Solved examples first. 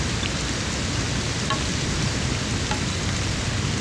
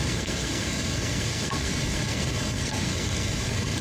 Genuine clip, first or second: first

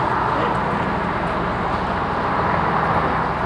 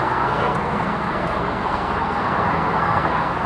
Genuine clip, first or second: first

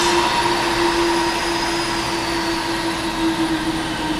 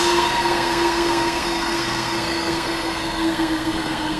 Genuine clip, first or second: first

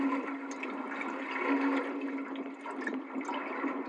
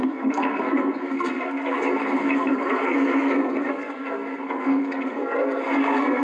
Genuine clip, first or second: first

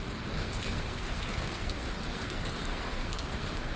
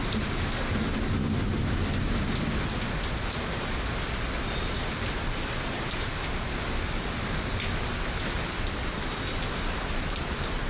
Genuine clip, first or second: second